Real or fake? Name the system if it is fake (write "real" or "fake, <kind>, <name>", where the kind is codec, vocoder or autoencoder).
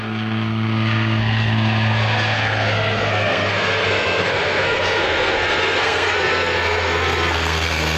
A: fake, codec, SNAC